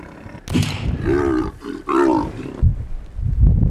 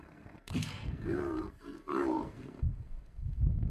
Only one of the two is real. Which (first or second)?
first